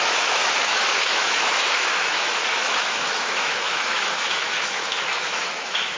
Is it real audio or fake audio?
fake